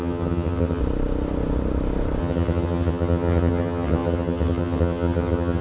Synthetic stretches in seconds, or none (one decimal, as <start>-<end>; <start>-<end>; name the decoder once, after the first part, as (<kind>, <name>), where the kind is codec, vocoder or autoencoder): 0.0-0.8 (vocoder, HiFi-GAN); 2.2-5.6